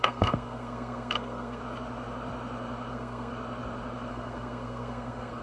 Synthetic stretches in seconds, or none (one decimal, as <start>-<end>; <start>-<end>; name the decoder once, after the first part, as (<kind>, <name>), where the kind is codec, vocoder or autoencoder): 0.0-1.6 (codec, SNAC); 2.9-3.3; 4.1-5.4